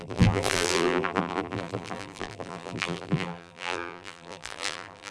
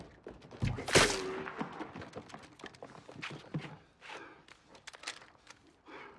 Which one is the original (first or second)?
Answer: second